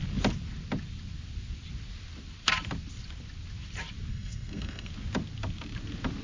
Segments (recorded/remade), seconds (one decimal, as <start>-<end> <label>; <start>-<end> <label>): 0.0-4.1 recorded; 4.1-4.9 remade; 4.9-6.2 recorded

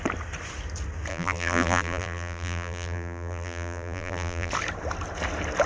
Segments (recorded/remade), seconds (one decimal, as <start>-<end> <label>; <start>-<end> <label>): 0.0-1.1 recorded; 1.1-4.5 remade; 4.5-5.7 recorded

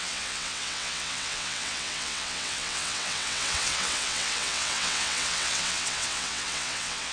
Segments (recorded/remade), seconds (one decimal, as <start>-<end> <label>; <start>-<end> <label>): 0.0-7.1 remade